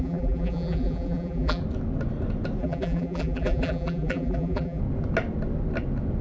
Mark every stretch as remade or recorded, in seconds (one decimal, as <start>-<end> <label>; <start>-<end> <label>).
0.0-1.6 remade; 1.6-2.6 recorded; 2.6-4.8 remade; 4.8-6.2 recorded